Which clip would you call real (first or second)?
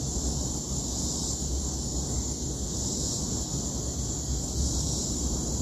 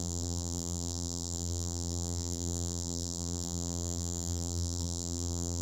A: first